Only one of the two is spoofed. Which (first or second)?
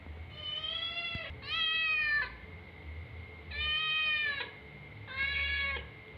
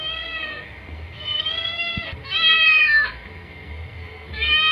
second